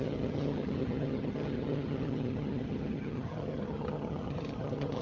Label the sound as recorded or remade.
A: remade